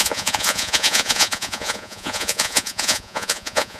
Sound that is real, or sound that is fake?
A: fake